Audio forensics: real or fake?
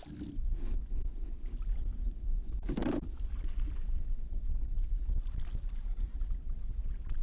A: real